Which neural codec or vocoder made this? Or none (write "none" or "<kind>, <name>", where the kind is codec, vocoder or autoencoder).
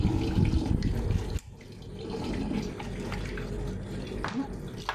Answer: none